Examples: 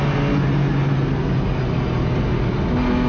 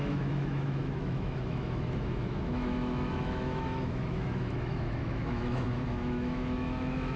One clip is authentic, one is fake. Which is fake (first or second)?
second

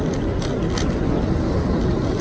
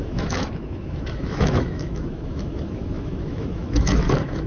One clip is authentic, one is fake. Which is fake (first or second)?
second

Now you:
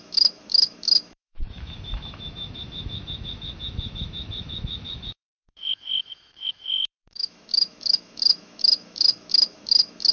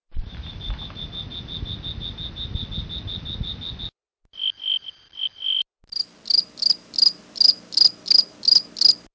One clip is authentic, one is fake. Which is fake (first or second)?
first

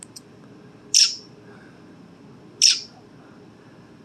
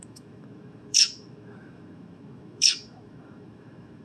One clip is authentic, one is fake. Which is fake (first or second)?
second